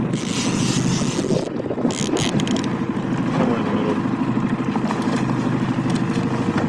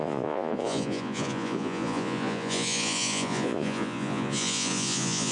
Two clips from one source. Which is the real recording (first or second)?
first